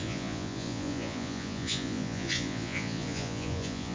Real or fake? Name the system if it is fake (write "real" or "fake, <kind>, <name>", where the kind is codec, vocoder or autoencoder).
fake, vocoder, Vocos